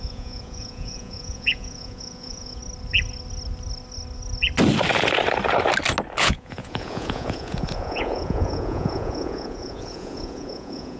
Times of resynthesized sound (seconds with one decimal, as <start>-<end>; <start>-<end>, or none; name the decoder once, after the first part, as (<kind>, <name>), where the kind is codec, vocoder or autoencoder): 0.0-2.6 (vocoder, Vocos); 6.2-11.0